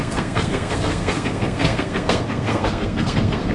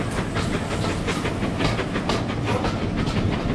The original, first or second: second